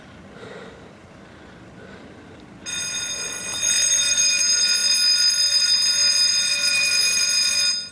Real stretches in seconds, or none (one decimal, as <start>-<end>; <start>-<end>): 0.0-7.9